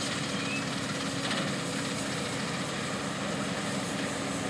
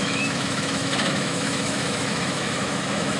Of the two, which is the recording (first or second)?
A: first